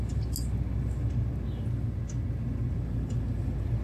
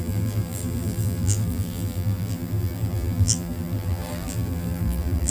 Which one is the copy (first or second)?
second